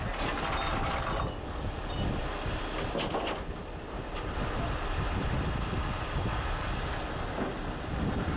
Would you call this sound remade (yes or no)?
no